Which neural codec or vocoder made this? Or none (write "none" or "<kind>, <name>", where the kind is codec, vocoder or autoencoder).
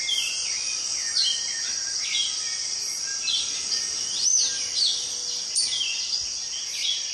none